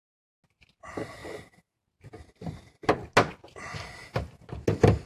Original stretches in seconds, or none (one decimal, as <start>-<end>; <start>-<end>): 0.0-5.1